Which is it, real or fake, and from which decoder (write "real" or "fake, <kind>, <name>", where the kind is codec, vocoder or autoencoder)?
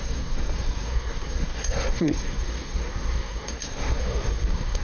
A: fake, codec, SNAC